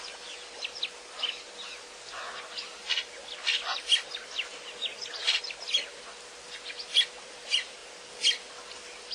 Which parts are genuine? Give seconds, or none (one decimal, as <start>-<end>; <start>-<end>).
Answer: 0.0-9.1